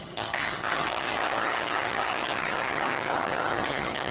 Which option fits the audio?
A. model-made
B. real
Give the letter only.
A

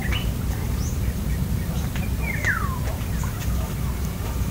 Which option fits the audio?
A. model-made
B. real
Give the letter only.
A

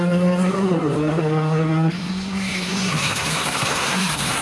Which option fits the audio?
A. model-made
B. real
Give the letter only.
A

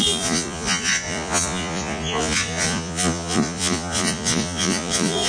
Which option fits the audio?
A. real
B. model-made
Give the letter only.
B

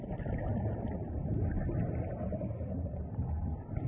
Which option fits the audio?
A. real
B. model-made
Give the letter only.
A